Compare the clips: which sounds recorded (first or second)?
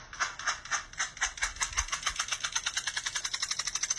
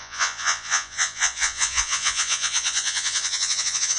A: first